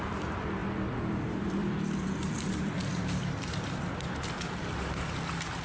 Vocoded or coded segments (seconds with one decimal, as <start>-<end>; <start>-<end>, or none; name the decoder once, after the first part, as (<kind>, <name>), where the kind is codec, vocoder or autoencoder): 0.0-5.6 (vocoder, BigVGAN v2)